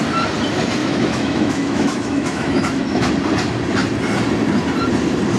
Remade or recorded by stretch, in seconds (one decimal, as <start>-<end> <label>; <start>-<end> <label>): 0.0-0.8 recorded; 0.8-3.1 remade; 3.1-5.4 recorded